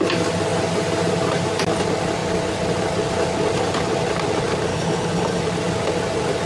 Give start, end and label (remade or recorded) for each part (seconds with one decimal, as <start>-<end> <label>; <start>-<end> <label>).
0.0-4.7 recorded; 4.7-5.4 remade; 5.4-6.5 recorded